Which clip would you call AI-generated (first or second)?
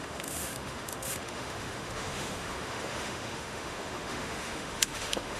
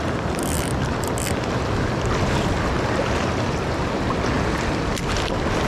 first